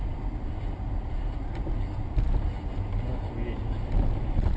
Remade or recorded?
recorded